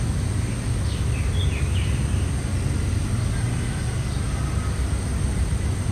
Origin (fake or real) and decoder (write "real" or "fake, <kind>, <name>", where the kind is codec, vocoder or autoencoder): real